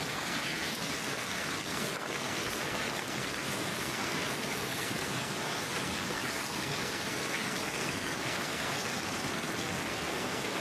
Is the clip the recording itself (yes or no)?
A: no